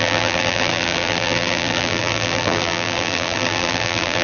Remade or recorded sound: remade